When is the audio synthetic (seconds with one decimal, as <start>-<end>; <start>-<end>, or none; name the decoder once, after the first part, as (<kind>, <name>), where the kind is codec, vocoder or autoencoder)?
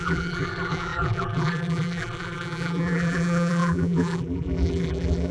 0.0-5.3 (vocoder, BigVGAN v2)